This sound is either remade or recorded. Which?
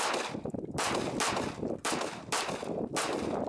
recorded